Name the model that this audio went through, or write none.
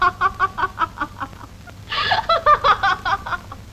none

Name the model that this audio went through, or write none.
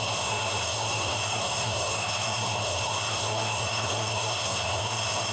codec, SNAC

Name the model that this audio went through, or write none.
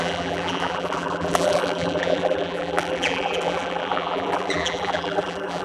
vocoder, BigVGAN v2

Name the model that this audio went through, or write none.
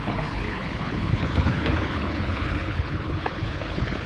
codec, HILCodec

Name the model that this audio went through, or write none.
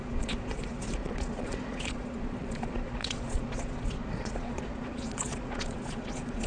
vocoder, Vocos